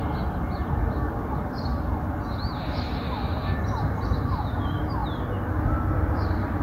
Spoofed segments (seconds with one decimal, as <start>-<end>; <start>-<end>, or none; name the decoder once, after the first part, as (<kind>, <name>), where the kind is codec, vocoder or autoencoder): 0.8-1.7 (vocoder, BigVGAN v2); 4.2-5.0; 5.5-6.6